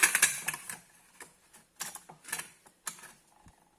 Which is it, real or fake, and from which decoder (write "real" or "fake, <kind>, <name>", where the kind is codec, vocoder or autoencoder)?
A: real